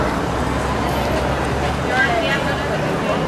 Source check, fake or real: real